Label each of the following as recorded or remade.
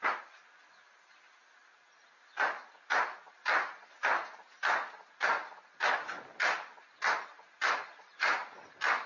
recorded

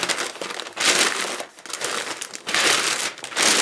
recorded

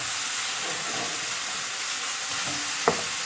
recorded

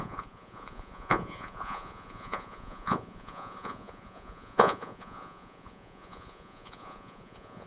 remade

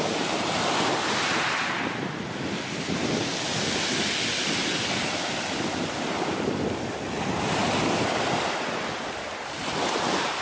recorded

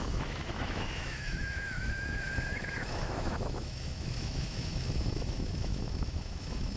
remade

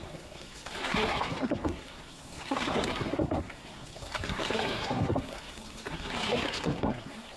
remade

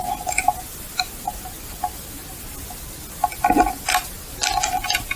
recorded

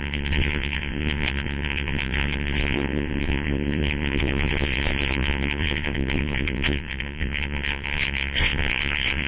remade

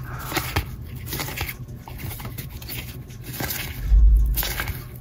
recorded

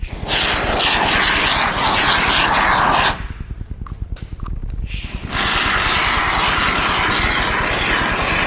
recorded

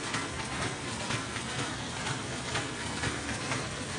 remade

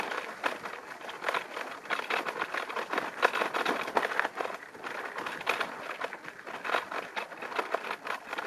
recorded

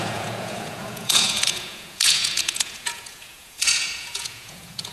remade